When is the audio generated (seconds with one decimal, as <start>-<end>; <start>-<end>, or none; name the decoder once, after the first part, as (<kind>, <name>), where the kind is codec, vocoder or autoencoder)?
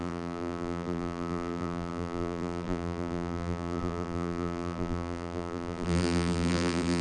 0.0-7.0 (vocoder, BigVGAN v2)